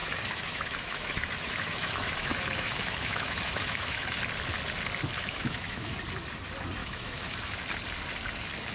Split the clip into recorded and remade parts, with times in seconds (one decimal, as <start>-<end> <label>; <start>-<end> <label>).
0.0-4.2 remade; 4.2-5.2 recorded; 5.2-5.9 remade; 5.9-6.8 recorded; 6.8-7.6 remade; 7.6-8.7 recorded